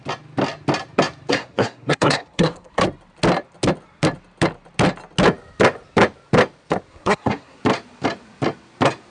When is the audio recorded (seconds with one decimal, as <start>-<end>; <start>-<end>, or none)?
0.0-1.3; 2.8-6.9; 7.6-9.1